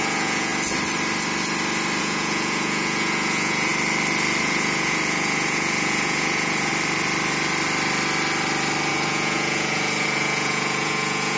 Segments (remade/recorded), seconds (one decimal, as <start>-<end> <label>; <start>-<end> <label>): 0.0-0.5 remade; 0.5-2.0 recorded; 2.0-3.7 remade; 3.7-4.4 recorded; 4.4-6.7 remade; 6.7-8.9 recorded; 8.9-11.4 remade